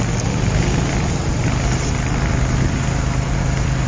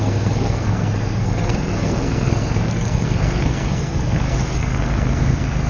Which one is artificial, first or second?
second